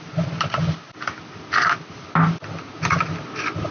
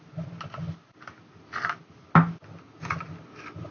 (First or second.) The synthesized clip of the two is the first